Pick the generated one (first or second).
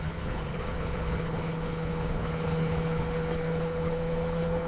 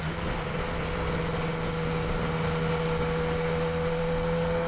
first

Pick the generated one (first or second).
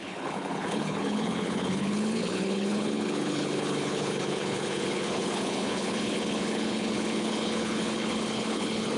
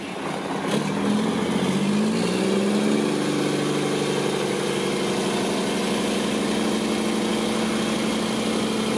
first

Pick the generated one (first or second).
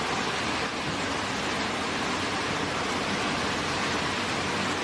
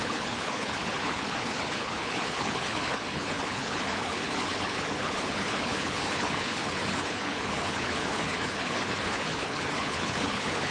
second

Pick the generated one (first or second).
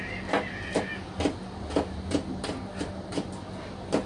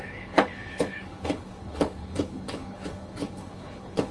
second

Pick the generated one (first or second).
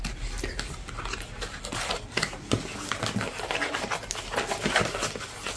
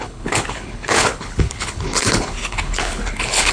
second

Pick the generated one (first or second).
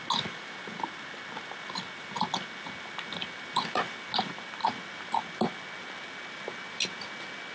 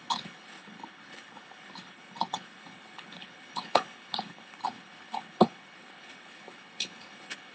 second